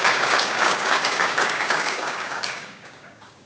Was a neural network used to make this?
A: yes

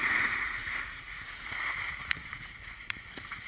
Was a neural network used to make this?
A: yes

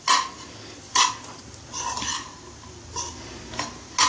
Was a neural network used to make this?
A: no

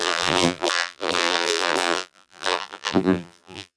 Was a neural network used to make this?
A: yes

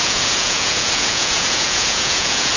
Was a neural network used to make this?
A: yes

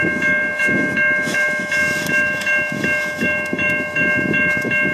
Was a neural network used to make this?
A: yes